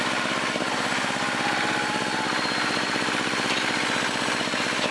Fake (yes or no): no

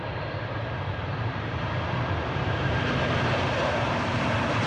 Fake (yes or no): yes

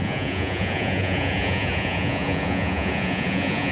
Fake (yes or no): yes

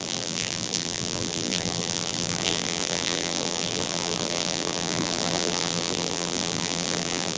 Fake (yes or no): yes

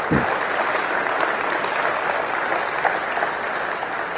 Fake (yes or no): no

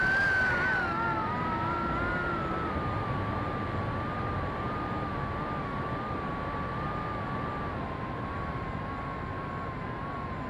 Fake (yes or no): no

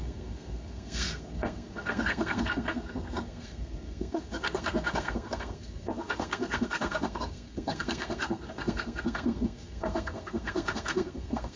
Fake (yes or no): yes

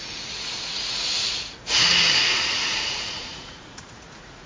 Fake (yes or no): yes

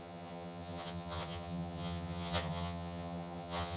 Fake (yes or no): yes